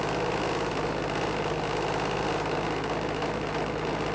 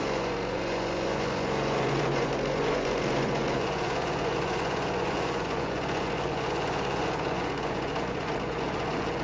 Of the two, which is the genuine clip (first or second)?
first